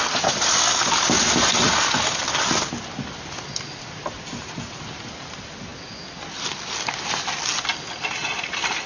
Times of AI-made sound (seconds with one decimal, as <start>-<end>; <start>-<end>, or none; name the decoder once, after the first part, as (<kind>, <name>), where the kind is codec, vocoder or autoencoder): none